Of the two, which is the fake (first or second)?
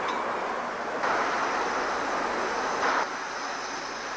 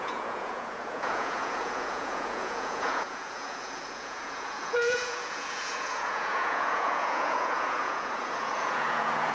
second